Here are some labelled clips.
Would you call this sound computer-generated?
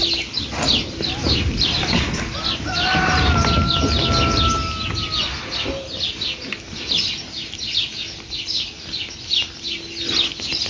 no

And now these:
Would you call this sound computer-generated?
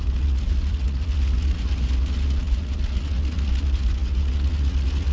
yes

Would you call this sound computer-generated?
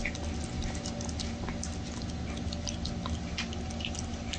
no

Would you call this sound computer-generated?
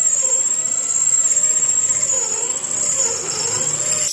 no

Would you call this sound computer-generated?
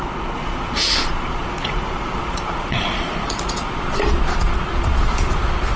yes